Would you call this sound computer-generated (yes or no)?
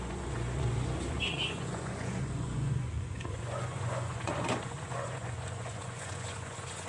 yes